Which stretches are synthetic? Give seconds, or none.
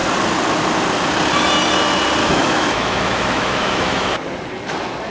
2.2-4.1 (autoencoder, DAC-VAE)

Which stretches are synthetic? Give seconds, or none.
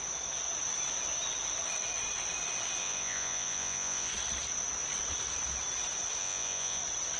2.8-4.1 (vocoder, Vocos); 6.2-6.8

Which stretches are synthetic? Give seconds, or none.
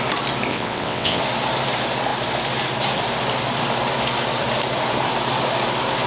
0.5-1.2 (vocoder, WaveNeXt)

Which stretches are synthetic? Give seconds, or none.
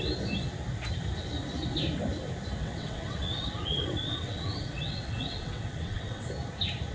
2.6-6.3 (vocoder, WaveNeXt)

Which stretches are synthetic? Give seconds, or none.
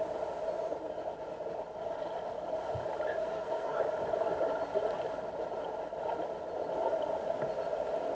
3.2-3.8 (codec, SNAC)